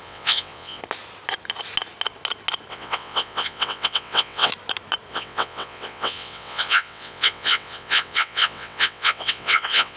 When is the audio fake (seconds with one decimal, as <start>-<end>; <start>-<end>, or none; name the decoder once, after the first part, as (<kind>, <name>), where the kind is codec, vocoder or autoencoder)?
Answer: 0.0-0.8 (vocoder, WaveNeXt); 2.7-4.5; 5.1-10.0